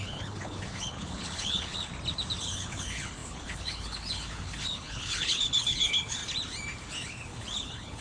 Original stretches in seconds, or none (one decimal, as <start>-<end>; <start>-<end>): 1.9-2.4; 6.2-6.9